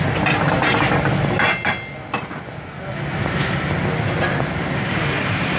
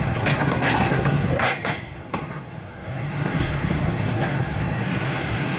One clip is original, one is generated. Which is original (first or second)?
first